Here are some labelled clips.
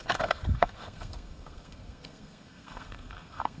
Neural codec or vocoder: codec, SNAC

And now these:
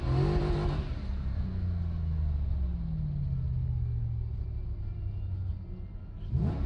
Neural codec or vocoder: none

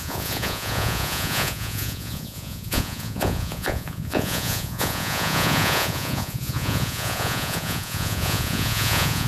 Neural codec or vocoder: vocoder, Vocos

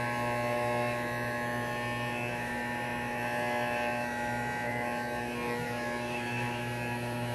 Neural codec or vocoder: autoencoder, DAC-VAE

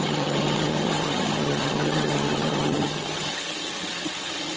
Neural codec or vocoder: vocoder, HiFi-GAN